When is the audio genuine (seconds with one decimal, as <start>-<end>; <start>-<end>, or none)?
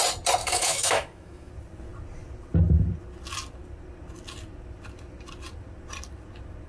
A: 0.0-0.4; 1.5-6.7